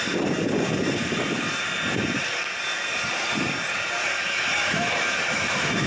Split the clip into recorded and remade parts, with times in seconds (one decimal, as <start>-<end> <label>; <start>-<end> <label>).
0.0-4.0 recorded; 4.0-5.9 remade